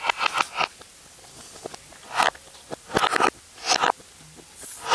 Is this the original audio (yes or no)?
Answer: yes